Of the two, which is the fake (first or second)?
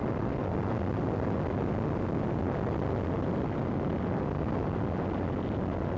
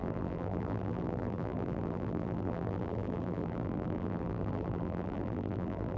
second